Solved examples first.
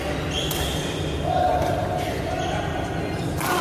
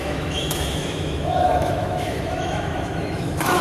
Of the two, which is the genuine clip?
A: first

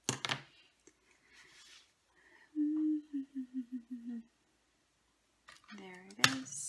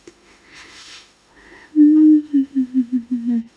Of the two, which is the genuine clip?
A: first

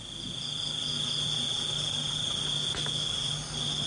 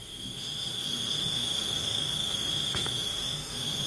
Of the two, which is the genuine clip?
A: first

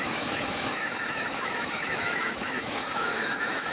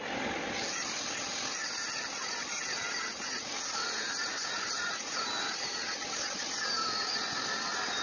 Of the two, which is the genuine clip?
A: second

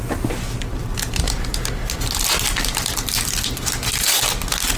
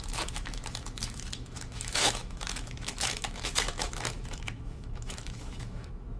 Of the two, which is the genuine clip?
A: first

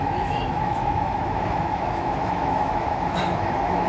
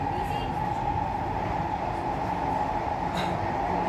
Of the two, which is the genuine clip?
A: second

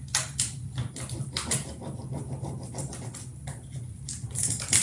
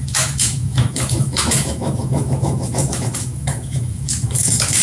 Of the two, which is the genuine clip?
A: first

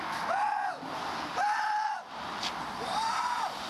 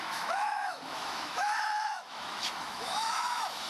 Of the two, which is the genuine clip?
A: first